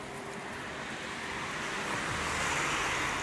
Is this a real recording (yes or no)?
yes